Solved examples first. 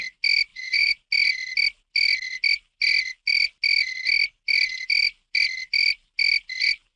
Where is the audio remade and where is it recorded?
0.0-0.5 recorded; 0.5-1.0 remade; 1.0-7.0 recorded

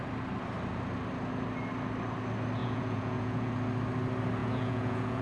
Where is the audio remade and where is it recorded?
0.0-2.6 recorded; 2.6-3.5 remade; 3.5-4.4 recorded; 4.4-5.2 remade

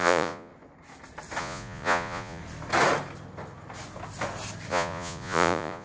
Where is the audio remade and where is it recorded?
0.0-0.5 remade; 0.5-1.4 recorded; 1.4-2.4 remade; 2.4-4.7 recorded; 4.7-5.8 remade

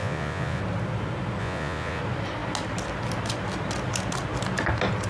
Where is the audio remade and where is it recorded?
0.0-0.6 remade; 0.6-1.4 recorded; 1.4-2.0 remade; 2.0-5.1 recorded

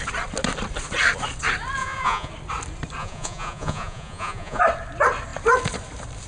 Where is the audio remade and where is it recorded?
0.0-1.8 recorded; 1.8-2.3 remade; 2.3-3.0 recorded; 3.0-4.6 remade; 4.6-6.3 recorded